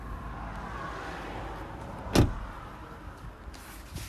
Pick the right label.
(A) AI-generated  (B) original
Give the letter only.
B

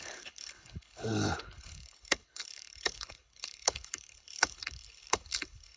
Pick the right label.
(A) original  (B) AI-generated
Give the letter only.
B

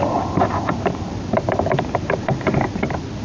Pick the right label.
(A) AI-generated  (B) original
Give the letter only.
B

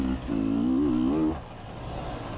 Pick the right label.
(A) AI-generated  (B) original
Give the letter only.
B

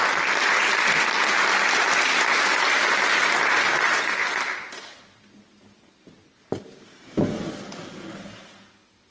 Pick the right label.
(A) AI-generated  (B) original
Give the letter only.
B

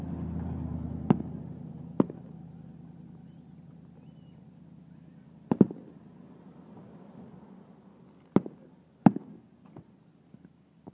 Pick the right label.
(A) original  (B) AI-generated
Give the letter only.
A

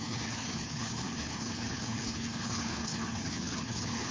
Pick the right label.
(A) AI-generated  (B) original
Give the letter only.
A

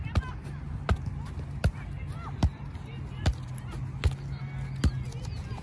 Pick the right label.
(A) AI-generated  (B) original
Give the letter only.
B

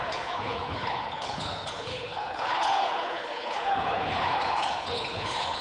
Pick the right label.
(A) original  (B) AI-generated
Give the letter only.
B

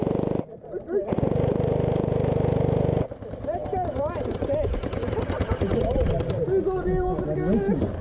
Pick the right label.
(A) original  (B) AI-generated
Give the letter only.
A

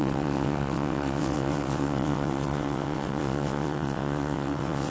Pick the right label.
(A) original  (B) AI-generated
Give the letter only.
B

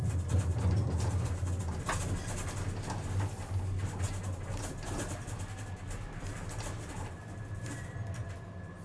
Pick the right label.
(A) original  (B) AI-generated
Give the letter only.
A